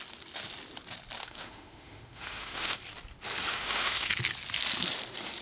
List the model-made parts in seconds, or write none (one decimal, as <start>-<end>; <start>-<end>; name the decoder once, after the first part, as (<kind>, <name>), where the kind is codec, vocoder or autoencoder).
1.2-2.8 (autoencoder, DAC-VAE); 3.5-4.1